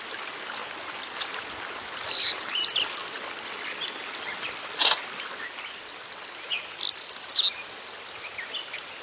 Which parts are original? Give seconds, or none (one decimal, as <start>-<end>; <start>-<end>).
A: 0.0-9.0